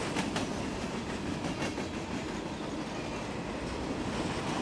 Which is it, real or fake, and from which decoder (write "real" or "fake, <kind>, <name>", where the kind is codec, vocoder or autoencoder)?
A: real